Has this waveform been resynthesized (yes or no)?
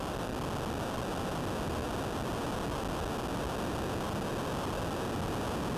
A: no